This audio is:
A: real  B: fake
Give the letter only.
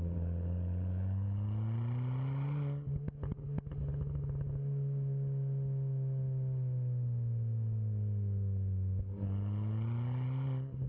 A